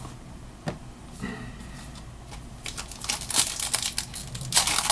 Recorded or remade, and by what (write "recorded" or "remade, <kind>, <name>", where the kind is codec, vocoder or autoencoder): recorded